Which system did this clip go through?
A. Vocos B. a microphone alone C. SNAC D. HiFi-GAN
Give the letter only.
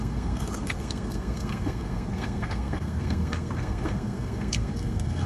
C